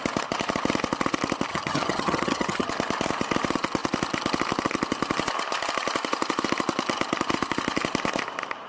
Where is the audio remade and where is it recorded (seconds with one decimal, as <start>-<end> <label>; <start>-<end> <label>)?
0.0-1.5 recorded; 1.5-2.7 remade; 2.7-8.7 recorded

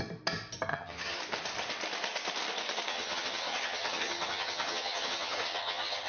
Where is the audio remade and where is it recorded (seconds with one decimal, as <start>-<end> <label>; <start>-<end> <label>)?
0.0-0.7 recorded; 0.7-1.2 remade; 1.2-2.9 recorded; 2.9-6.1 remade